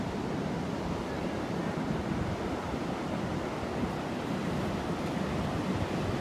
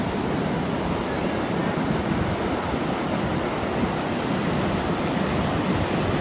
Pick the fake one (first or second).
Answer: first